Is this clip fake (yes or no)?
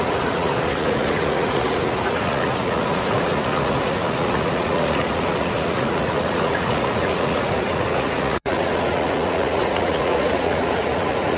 yes